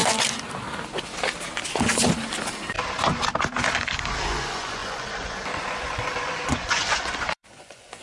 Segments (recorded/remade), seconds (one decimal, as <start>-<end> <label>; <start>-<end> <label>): 0.0-4.2 recorded; 4.2-8.0 remade